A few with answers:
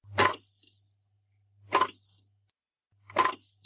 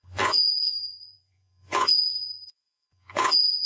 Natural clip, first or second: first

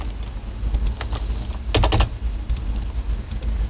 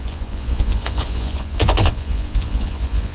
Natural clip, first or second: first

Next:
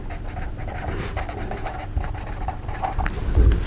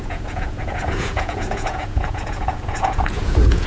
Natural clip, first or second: first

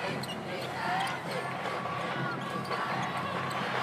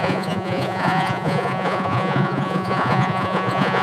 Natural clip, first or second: first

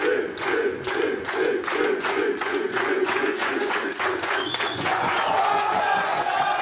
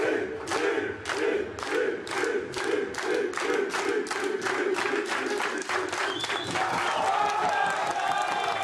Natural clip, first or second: second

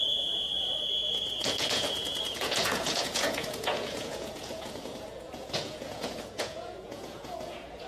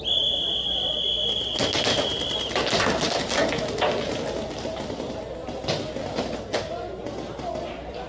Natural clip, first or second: second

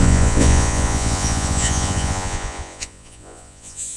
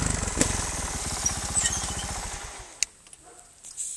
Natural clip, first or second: second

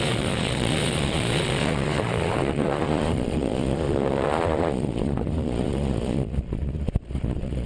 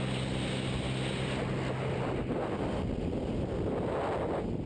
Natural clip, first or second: second